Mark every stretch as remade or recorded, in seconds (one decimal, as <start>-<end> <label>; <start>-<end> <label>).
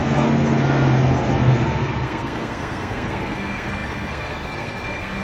0.0-5.2 remade